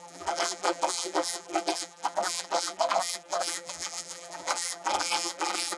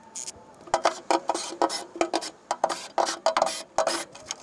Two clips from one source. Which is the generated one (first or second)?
first